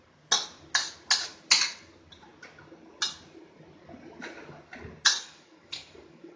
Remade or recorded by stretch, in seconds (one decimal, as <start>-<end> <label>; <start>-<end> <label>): 0.0-5.2 recorded; 5.2-6.4 remade